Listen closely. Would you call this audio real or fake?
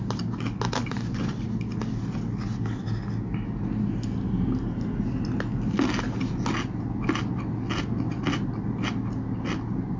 real